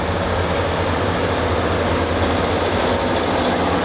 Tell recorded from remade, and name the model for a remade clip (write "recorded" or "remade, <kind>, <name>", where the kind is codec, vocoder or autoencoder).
recorded